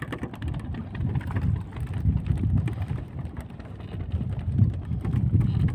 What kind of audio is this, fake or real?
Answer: fake